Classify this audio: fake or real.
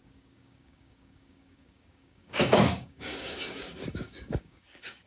fake